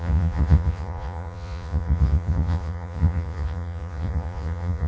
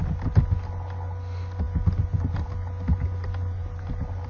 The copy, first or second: first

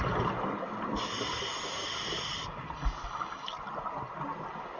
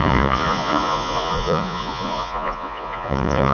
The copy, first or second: second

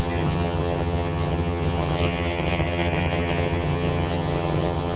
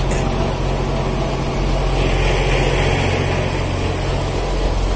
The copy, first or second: first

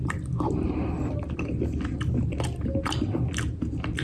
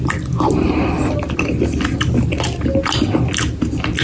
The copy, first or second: first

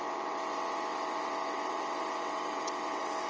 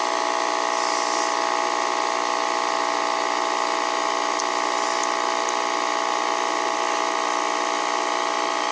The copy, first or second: first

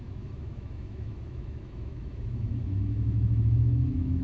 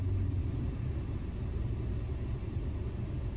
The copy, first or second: first